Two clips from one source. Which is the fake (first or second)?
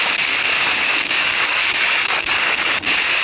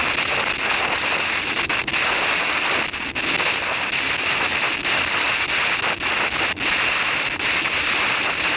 first